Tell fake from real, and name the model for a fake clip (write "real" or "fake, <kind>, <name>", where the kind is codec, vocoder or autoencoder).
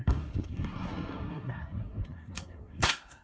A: fake, codec, SNAC